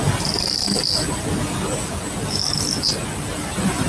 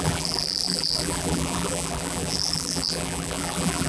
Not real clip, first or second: second